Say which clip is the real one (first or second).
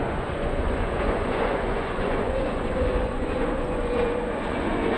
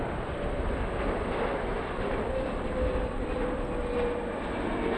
second